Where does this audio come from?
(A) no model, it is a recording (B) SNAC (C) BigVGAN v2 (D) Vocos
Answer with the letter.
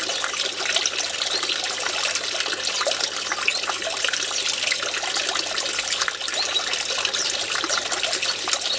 A